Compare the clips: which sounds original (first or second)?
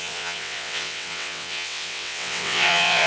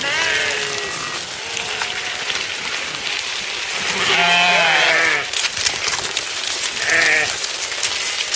second